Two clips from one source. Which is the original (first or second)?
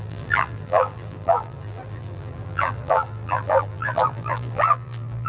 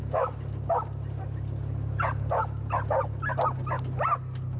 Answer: second